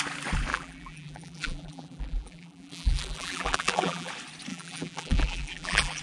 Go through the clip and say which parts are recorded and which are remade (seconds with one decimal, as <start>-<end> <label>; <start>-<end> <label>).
0.0-0.5 recorded; 0.5-4.1 remade; 4.1-4.5 recorded; 4.5-6.0 remade